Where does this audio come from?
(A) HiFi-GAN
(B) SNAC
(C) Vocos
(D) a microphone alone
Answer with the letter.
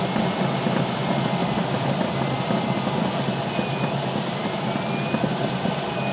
D